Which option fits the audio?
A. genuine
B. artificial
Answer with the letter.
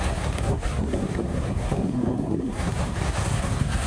B